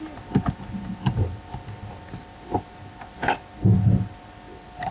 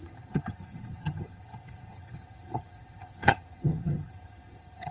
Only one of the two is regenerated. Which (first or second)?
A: second